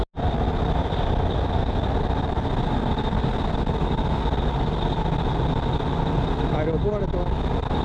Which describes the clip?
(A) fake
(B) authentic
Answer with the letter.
B